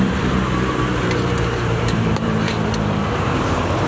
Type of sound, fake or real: fake